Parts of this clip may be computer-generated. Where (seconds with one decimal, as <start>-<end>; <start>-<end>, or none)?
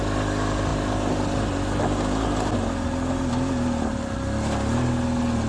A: none